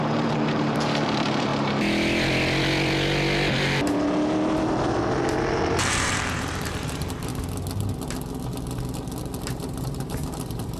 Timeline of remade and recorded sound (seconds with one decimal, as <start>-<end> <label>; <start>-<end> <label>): 0.0-1.5 remade; 1.5-5.4 recorded; 5.4-7.3 remade; 7.3-9.5 recorded; 9.5-10.8 remade